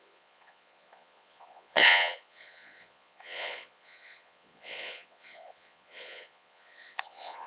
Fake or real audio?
fake